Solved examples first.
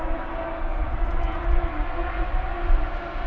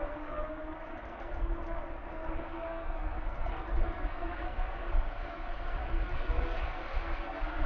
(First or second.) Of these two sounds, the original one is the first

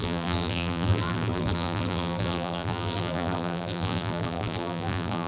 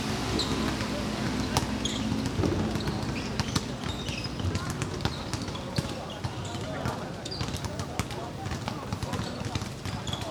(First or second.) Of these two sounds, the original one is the second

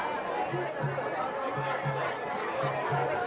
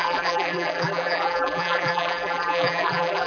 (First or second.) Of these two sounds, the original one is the first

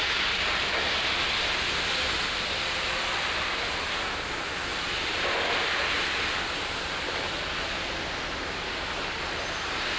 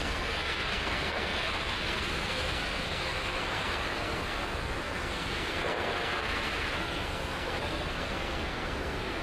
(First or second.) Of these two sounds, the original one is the first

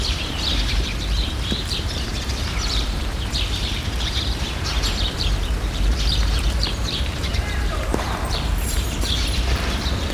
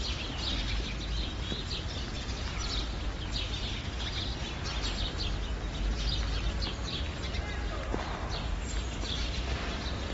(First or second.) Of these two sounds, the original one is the second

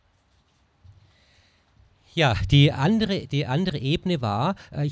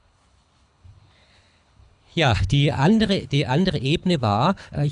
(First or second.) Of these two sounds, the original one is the first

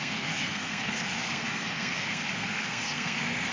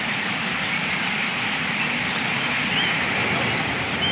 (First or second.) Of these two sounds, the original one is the second